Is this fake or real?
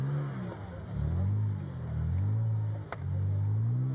real